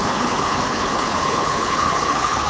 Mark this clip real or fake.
fake